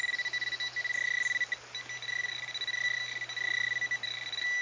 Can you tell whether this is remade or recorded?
recorded